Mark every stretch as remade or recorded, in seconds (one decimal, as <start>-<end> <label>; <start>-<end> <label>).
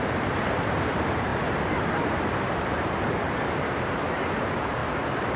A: 0.0-4.8 remade; 4.8-5.4 recorded